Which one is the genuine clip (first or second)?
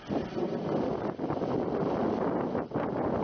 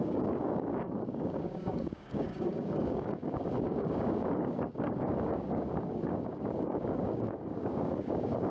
first